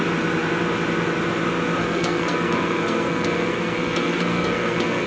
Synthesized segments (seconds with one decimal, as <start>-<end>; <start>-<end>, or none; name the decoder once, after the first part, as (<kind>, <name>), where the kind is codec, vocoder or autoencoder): 1.8-5.1 (codec, SNAC)